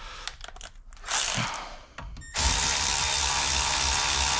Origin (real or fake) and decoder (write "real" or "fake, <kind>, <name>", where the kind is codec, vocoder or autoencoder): real